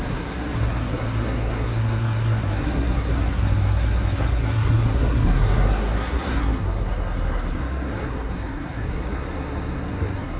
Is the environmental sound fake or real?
fake